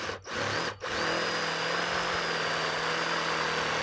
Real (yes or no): yes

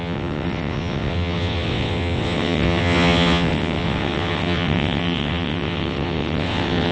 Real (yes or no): no